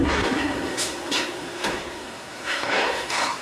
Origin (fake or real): fake